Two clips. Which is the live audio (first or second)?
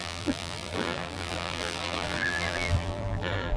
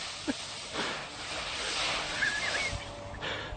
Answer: second